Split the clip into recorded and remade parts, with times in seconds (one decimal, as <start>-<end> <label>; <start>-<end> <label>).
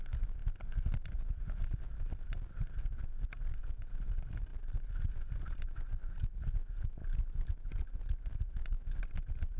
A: 0.0-9.6 recorded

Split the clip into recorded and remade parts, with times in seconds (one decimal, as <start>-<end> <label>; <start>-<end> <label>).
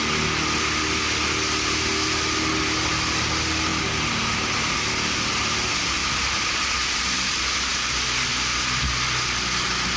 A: 0.0-6.0 recorded; 6.0-7.0 remade; 7.0-10.0 recorded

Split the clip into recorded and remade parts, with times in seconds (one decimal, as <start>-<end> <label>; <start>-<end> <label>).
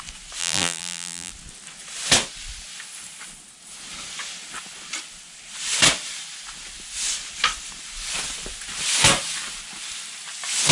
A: 0.0-0.4 recorded; 0.4-1.3 remade; 1.3-10.7 recorded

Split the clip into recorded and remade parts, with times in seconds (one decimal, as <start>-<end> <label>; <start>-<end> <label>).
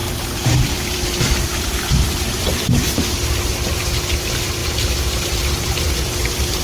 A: 0.0-4.0 remade; 4.0-4.6 recorded; 4.6-6.6 remade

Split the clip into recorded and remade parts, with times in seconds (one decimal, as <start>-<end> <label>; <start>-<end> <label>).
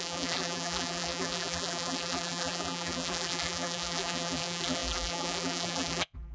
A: 0.0-6.3 remade